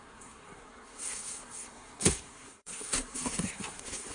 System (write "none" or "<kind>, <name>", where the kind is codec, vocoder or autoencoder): codec, SNAC